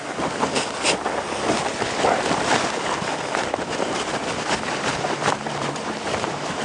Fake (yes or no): yes